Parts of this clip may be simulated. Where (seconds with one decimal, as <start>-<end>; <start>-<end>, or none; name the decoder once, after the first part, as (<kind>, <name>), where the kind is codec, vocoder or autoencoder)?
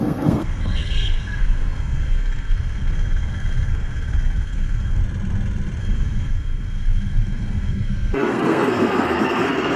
0.0-5.0 (codec, SNAC); 5.8-9.8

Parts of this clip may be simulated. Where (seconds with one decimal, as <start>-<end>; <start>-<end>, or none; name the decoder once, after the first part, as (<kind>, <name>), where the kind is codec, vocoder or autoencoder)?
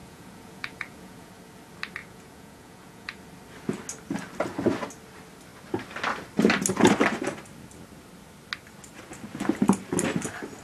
0.0-1.3 (vocoder, Vocos); 2.0-3.2